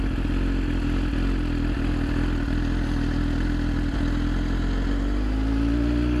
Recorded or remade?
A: recorded